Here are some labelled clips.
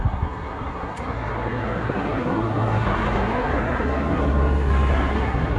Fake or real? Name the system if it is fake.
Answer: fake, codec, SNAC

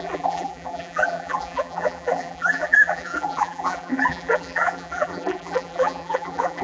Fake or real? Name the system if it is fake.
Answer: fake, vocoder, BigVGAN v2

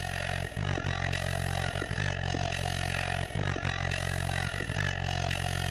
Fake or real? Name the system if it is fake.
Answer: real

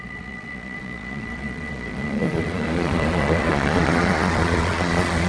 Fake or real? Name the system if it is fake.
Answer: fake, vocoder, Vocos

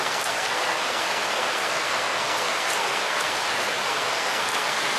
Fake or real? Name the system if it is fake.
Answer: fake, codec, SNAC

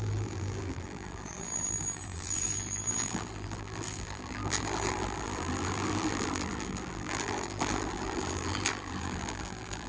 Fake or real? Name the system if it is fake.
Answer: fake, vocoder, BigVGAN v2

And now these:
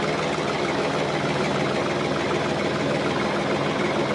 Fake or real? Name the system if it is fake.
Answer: real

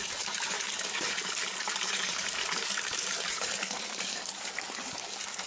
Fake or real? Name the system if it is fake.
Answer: fake, codec, DAC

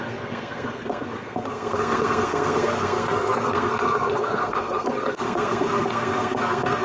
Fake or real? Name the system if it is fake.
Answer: fake, codec, SNAC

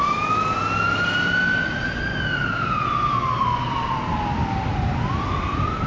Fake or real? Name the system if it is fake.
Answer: real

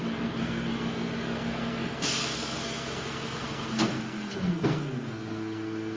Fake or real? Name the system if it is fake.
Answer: fake, codec, SNAC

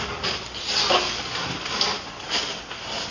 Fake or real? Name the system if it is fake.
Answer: real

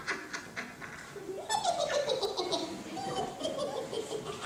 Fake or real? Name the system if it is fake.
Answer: real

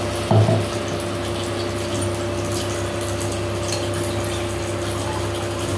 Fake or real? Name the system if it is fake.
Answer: real